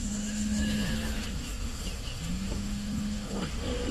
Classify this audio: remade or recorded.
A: remade